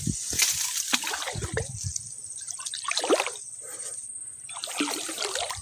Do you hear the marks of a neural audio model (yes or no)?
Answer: no